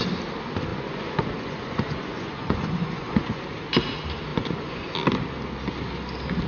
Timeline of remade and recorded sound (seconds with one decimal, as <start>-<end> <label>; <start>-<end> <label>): 0.0-0.7 recorded; 0.7-3.4 remade; 3.4-4.3 recorded; 4.3-4.9 remade; 4.9-6.5 recorded